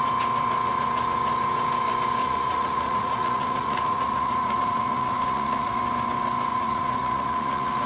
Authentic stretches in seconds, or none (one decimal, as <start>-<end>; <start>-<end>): 0.0-2.2; 5.8-6.5